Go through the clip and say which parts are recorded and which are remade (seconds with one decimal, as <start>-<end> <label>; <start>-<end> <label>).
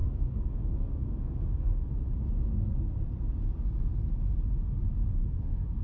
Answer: 0.0-1.9 remade; 1.9-5.2 recorded; 5.2-5.8 remade